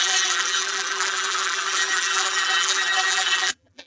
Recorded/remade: remade